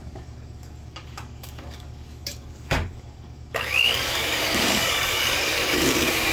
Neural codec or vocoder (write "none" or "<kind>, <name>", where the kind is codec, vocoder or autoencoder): codec, DAC